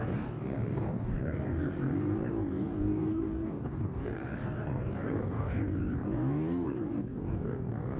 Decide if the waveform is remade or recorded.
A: remade